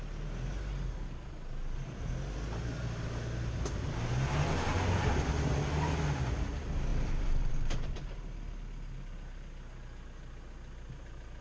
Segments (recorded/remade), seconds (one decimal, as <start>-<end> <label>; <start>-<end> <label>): 0.0-6.9 recorded; 6.9-7.5 remade; 7.5-11.4 recorded